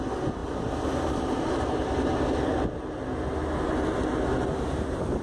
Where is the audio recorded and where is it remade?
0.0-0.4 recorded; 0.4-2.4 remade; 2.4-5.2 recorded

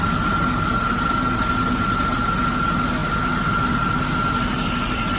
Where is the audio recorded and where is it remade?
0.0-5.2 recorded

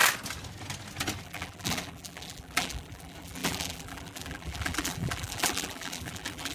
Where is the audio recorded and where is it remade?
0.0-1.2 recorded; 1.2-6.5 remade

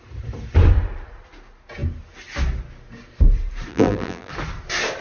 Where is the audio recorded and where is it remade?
0.0-3.7 recorded; 3.7-4.3 remade; 4.3-5.0 recorded